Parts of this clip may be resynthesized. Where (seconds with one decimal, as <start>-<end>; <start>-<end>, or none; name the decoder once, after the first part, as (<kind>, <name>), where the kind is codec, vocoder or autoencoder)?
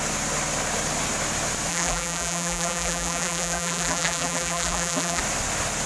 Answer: 1.7-5.2 (vocoder, BigVGAN v2)